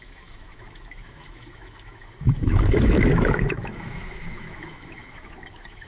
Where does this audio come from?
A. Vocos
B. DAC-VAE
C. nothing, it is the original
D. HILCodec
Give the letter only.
B